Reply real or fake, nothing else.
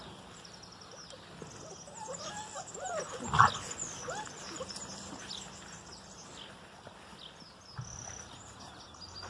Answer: real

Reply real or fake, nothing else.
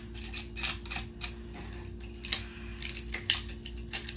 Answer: real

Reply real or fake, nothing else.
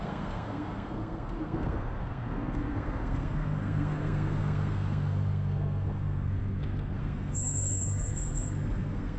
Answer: fake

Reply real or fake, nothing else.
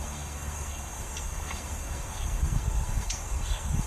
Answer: fake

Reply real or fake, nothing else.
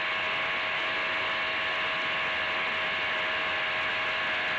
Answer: real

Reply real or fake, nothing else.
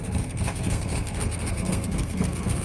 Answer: fake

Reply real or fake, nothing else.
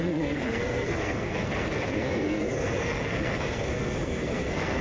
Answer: fake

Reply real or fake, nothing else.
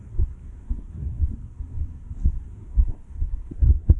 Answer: fake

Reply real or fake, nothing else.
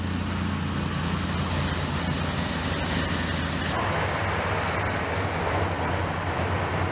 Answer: real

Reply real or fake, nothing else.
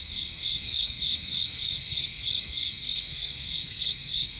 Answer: fake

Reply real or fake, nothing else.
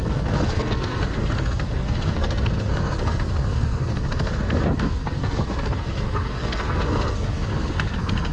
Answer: fake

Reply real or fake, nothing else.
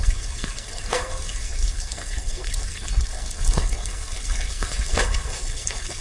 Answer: fake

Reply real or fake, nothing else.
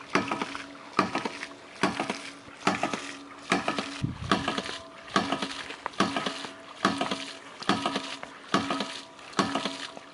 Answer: real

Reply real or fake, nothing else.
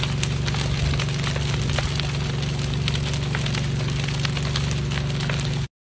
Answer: real